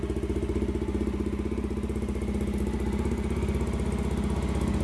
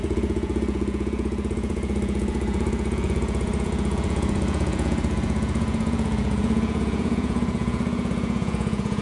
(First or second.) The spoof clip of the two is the second